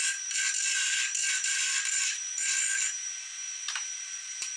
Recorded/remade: remade